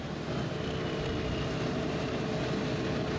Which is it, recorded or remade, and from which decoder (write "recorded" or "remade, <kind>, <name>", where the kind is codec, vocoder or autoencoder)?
recorded